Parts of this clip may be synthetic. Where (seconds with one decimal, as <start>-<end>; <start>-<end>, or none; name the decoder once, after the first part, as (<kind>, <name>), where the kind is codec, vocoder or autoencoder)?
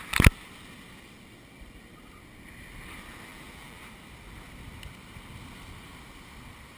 3.3-3.8 (vocoder, BigVGAN v2)